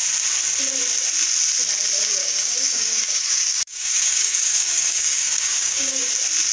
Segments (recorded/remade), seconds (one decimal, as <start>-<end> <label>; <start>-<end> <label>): 0.0-2.2 recorded; 2.2-6.1 remade; 6.1-6.5 recorded